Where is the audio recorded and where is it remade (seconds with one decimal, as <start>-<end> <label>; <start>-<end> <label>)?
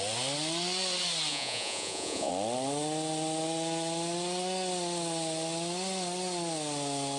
0.0-1.3 recorded; 1.3-2.3 remade; 2.3-7.2 recorded